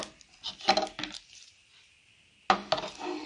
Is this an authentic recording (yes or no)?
yes